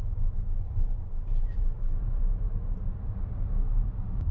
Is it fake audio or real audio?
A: fake